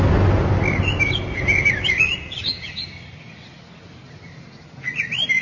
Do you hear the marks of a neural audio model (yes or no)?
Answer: no